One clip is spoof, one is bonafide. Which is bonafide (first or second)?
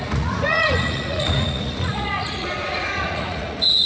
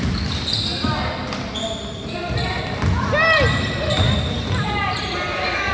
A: second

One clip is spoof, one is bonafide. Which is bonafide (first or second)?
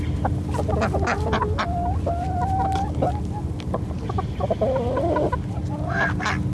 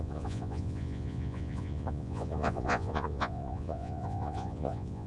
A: first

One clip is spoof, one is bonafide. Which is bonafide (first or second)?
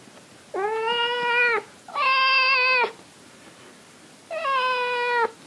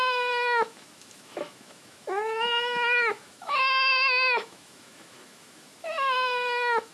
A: first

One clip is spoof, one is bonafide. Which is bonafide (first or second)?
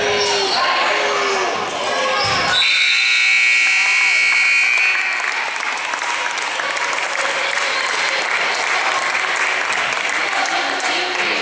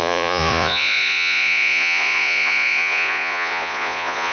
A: first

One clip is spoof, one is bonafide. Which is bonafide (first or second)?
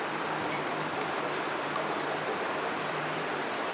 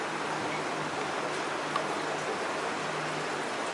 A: second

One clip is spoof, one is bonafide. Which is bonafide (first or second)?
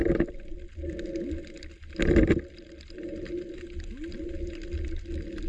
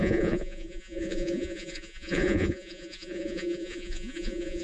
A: first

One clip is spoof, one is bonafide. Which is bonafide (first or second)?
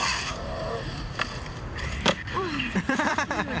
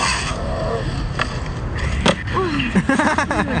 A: second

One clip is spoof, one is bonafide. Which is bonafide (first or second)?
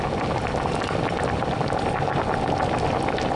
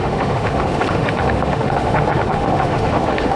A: first